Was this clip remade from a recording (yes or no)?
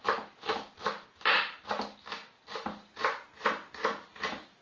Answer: no